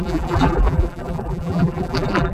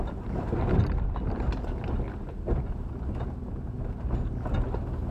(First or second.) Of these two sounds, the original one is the second